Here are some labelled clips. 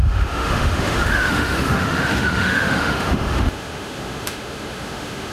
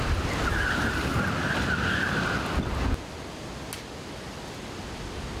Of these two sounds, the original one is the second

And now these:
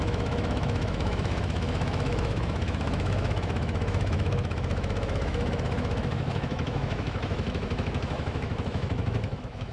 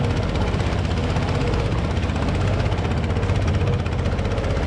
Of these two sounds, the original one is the second